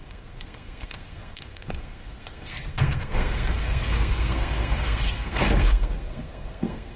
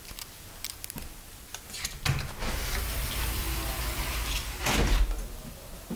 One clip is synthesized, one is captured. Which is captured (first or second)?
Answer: second